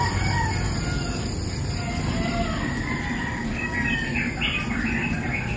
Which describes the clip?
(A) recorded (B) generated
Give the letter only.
A